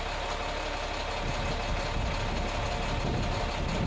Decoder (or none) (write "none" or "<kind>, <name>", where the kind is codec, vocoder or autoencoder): none